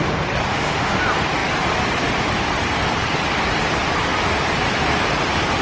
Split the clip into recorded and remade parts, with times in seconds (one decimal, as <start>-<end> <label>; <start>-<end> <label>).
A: 0.0-0.5 recorded; 0.5-1.0 remade; 1.0-5.6 recorded